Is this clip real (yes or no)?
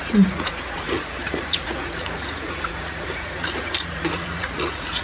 no